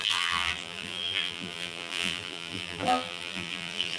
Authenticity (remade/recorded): remade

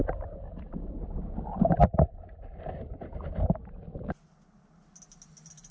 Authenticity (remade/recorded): recorded